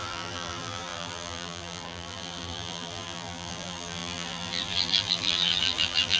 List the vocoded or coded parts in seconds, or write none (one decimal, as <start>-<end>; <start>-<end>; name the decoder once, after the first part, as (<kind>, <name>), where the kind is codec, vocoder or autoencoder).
0.0-6.2 (vocoder, BigVGAN v2)